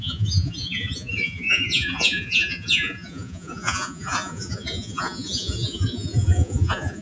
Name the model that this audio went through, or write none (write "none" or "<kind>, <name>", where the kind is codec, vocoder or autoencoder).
vocoder, Vocos